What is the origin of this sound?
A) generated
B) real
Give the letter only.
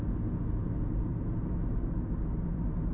B